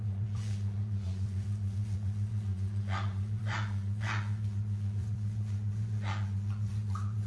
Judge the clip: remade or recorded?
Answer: remade